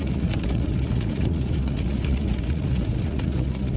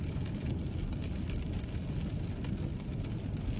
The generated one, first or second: first